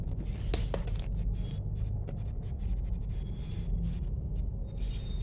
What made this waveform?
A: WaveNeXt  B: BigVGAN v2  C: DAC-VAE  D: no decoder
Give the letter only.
D